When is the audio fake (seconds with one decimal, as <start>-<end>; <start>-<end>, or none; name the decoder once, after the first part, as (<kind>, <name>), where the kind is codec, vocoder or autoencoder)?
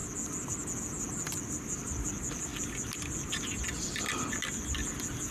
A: none